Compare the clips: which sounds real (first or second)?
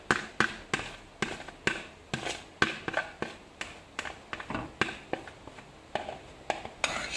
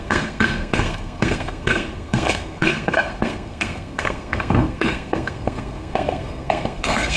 first